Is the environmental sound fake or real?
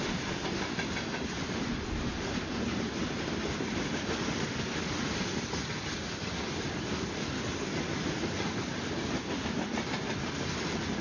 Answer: real